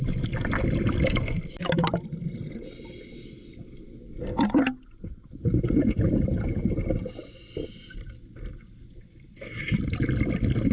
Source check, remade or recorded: recorded